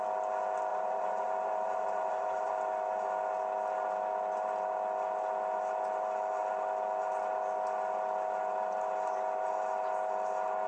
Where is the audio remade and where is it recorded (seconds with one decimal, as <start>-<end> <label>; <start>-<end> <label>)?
0.0-0.7 recorded; 0.7-2.5 remade; 2.5-10.7 recorded